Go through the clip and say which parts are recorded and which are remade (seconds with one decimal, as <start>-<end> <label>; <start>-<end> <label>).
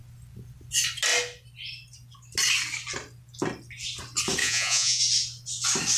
0.0-4.4 recorded; 4.4-5.0 remade; 5.0-6.0 recorded